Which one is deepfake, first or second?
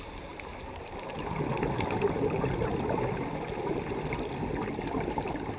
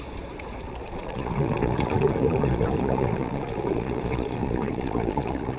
second